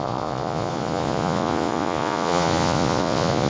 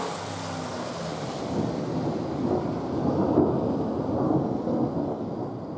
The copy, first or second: first